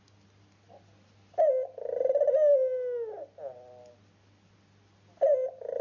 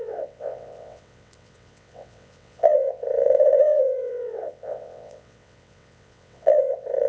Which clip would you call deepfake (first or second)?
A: second